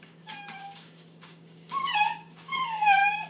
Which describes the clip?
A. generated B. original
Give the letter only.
A